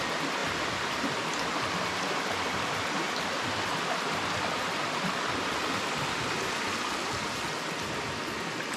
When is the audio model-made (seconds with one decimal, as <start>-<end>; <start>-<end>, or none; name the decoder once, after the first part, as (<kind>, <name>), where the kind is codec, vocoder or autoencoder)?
none